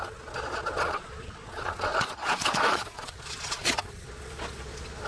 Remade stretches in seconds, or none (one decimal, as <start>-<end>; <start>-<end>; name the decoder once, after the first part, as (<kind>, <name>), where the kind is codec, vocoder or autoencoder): 0.0-5.1 (vocoder, Vocos)